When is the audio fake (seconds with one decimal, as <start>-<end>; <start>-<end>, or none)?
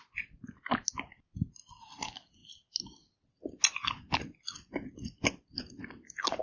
none